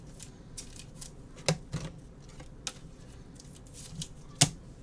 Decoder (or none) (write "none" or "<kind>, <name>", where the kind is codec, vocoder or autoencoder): none